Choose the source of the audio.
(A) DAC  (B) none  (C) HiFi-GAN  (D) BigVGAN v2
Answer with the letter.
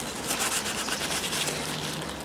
B